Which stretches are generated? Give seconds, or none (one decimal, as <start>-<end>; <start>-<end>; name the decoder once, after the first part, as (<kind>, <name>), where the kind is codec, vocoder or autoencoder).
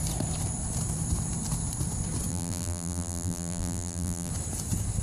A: 2.3-4.3 (vocoder, BigVGAN v2)